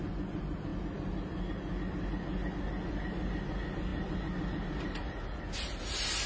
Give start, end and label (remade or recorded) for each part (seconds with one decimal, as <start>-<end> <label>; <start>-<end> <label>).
0.0-6.3 recorded